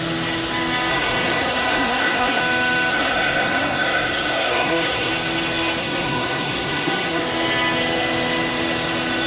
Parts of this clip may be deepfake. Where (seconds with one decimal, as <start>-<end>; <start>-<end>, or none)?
0.9-2.4; 2.9-5.1; 5.8-7.2